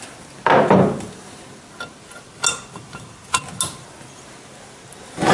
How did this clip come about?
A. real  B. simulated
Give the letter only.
A